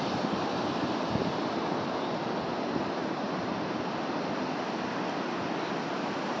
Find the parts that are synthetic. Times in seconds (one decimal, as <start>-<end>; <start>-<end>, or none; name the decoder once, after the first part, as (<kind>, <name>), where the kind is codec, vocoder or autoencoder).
3.0-3.6 (vocoder, BigVGAN v2)